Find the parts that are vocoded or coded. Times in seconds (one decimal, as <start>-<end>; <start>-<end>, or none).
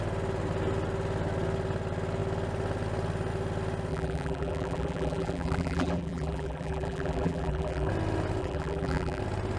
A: 3.9-7.9; 8.4-9.2